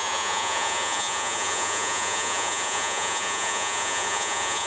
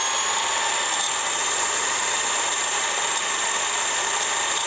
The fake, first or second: first